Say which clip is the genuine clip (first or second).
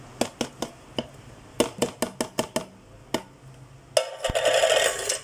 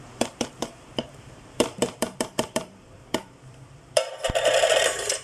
first